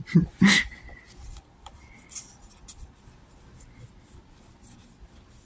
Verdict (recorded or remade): recorded